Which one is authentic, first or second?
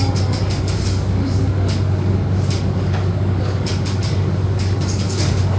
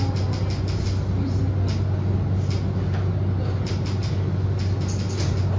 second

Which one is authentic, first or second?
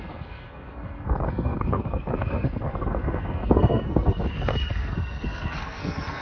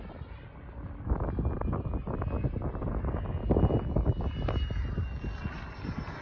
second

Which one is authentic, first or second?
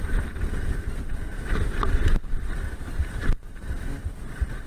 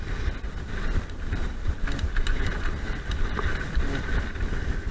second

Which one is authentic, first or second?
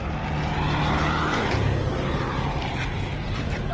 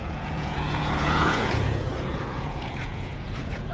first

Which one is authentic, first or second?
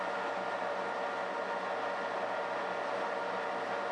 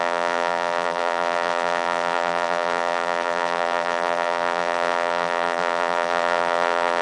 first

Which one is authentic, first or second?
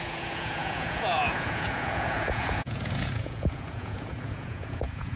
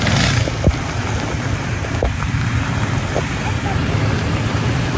second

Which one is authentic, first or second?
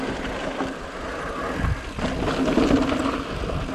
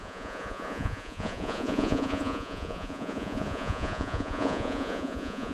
first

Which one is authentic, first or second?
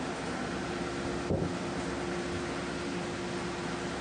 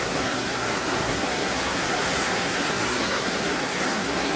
first